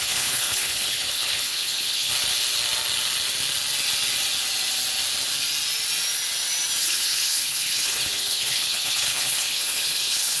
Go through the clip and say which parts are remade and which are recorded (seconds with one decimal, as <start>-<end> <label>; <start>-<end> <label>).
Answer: 0.0-2.1 remade; 2.1-6.8 recorded; 6.8-10.4 remade